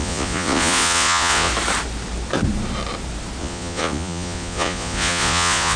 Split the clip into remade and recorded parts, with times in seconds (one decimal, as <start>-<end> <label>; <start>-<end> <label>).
0.0-1.5 remade; 1.5-3.4 recorded; 3.4-5.8 remade